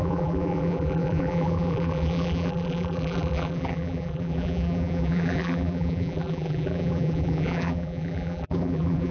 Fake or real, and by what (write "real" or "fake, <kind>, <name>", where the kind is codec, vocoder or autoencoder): fake, vocoder, BigVGAN v2